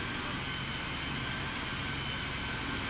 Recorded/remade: recorded